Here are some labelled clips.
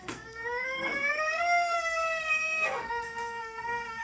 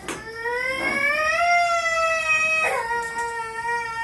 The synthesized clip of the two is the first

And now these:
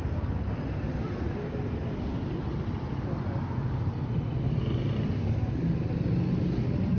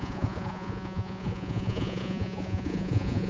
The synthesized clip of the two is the second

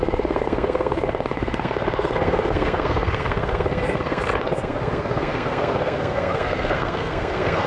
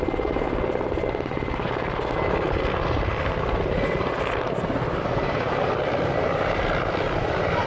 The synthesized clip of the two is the first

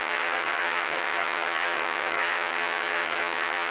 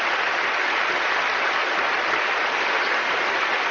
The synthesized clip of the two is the first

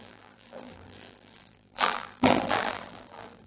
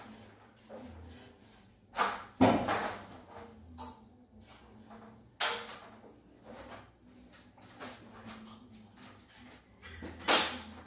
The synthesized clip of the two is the first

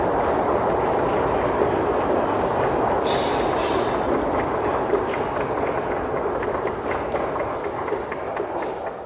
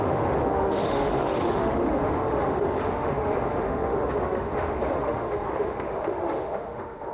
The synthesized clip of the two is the second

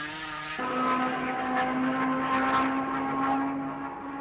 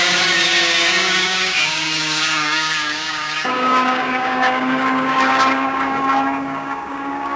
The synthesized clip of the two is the second